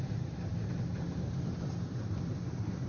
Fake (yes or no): yes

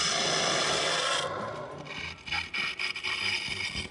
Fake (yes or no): no